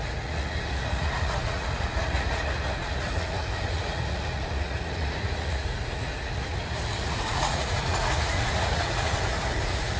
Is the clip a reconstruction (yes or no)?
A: yes